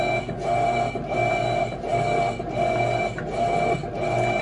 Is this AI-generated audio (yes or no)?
no